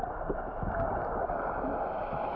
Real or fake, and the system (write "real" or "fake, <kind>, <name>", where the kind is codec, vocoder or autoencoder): real